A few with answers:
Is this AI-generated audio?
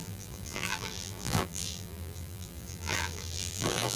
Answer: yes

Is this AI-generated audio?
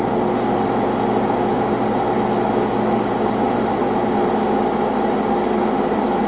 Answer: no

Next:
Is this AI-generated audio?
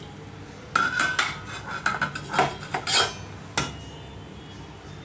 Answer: no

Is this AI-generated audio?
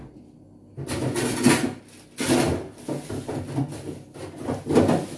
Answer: no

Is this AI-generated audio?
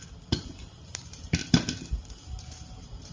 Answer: no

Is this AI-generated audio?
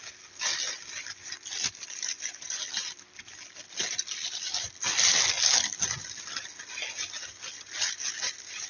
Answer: no